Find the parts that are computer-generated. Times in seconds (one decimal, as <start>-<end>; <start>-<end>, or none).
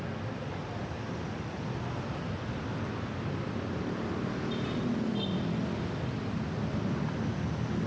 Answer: none